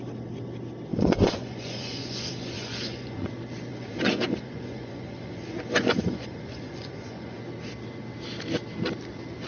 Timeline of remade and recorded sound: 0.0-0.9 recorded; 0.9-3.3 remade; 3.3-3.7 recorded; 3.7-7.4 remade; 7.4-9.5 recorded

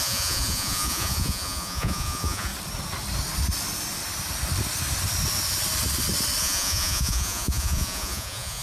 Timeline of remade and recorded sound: 0.0-2.5 remade; 2.5-6.4 recorded; 6.4-8.6 remade

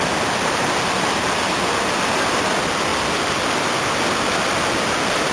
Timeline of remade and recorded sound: 0.0-5.3 recorded

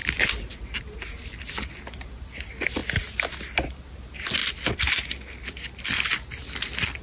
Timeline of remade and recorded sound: 0.0-7.0 recorded

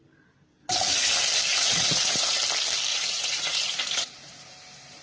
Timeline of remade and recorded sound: 0.0-1.5 recorded; 1.5-2.4 remade; 2.4-2.9 recorded; 2.9-4.1 remade; 4.1-5.0 recorded

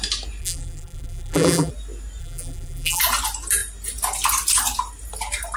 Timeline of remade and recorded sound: 0.0-0.4 recorded; 0.4-1.7 remade; 1.7-2.2 recorded; 2.2-3.0 remade; 3.0-5.6 recorded

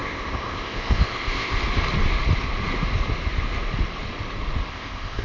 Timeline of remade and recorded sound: 0.0-1.6 remade; 1.6-4.7 recorded; 4.7-5.2 remade